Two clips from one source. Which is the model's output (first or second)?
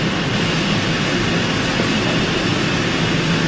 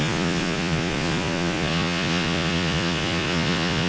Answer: second